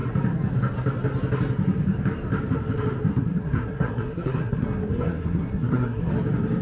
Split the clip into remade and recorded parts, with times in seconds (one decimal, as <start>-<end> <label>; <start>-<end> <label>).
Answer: 0.0-3.1 recorded; 3.1-6.1 remade; 6.1-6.6 recorded